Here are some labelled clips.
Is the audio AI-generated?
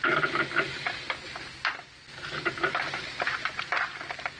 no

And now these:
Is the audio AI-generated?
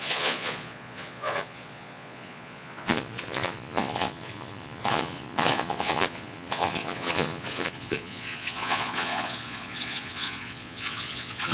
yes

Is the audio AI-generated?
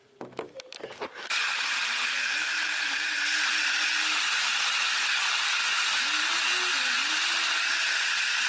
no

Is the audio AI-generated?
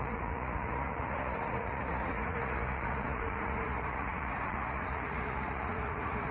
yes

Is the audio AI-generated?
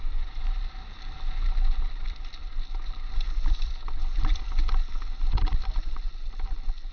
no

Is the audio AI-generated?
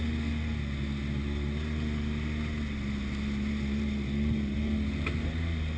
no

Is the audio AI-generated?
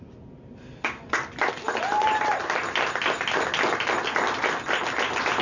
no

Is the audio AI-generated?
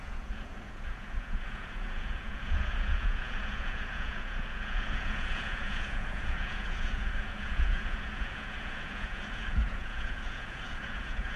yes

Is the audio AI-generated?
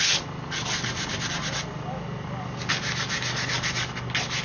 no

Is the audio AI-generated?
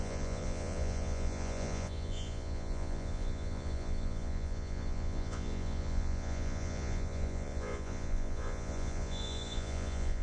yes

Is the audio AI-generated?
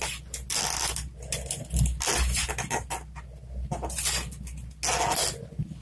no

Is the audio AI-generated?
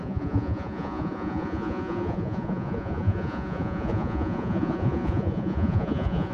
yes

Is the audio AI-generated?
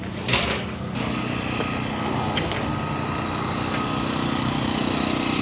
no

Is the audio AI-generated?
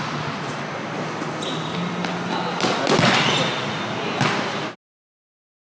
no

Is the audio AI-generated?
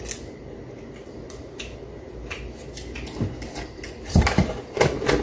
no